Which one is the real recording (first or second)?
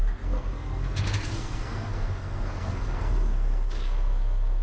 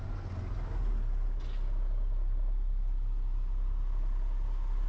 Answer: second